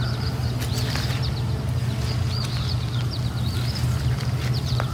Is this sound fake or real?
real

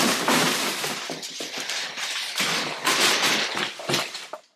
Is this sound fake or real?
fake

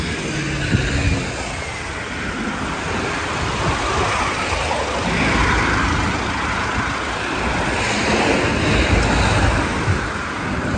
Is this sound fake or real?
real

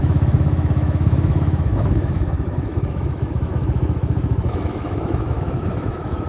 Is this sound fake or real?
fake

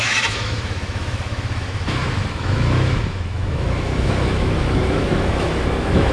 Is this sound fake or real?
fake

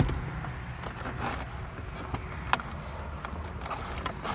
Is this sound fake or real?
real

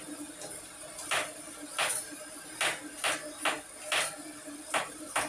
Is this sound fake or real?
real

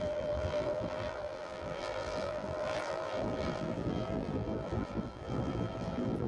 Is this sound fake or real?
fake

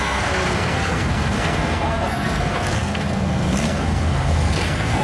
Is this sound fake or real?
fake